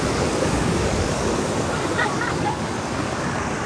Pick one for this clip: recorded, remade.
remade